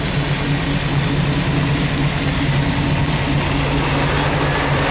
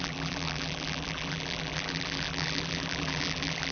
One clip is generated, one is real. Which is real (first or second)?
first